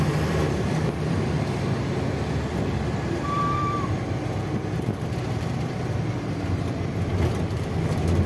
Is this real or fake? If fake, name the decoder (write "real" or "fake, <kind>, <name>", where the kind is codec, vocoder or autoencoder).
fake, vocoder, BigVGAN v2